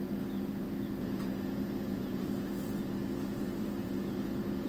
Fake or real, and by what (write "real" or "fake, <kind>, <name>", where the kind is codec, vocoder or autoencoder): fake, vocoder, Vocos